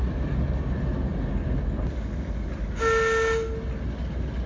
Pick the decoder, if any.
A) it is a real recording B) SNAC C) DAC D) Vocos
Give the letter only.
A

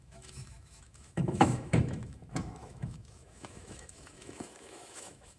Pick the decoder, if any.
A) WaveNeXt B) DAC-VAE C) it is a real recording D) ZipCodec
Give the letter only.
B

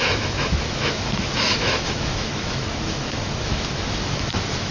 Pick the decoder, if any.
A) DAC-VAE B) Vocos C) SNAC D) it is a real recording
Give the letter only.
A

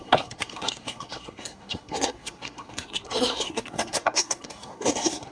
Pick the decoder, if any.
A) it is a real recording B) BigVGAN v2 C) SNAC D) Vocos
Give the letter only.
C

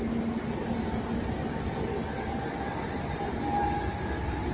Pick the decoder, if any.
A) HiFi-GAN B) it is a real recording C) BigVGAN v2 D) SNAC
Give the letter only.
B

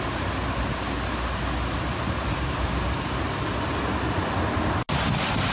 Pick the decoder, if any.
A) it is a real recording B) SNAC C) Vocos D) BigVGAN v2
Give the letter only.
A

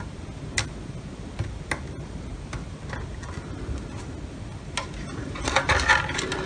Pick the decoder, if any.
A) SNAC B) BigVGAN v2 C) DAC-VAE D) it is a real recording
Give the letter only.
D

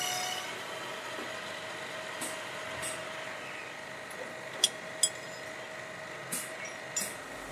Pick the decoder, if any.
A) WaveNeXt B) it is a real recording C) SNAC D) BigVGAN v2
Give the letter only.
B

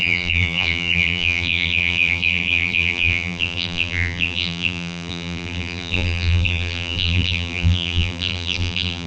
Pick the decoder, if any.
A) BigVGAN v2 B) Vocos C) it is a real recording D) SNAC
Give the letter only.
A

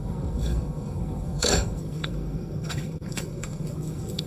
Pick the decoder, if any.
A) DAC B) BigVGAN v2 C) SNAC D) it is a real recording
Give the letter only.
C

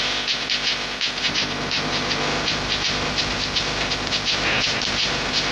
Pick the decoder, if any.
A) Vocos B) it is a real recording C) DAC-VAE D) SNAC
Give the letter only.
B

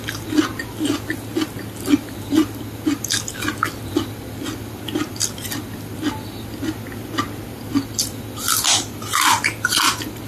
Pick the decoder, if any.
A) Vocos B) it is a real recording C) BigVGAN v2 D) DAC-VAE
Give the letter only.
B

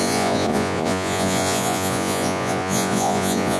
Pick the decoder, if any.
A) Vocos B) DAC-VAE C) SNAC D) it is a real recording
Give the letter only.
A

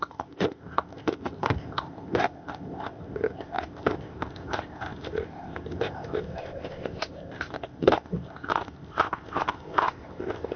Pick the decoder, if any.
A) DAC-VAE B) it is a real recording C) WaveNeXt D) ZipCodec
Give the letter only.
D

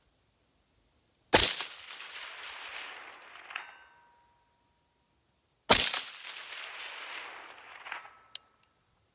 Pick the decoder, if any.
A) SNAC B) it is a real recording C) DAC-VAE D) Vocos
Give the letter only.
B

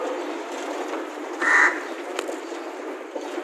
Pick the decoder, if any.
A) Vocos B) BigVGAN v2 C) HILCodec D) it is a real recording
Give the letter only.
D